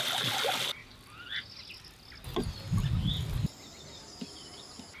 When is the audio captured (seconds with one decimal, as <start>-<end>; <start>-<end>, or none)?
0.0-5.0